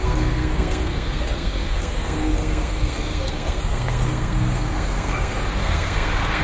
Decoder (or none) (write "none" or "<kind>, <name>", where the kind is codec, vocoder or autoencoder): codec, SNAC